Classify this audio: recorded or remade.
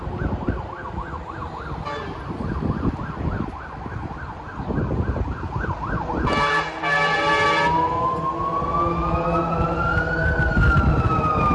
recorded